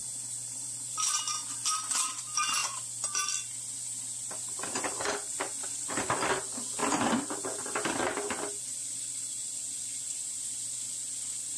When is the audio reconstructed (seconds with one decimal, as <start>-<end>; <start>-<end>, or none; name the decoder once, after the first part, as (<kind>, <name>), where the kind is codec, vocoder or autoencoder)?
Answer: none